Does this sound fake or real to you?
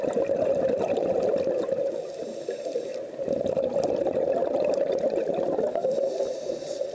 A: real